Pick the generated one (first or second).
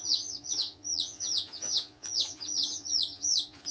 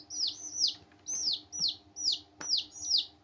first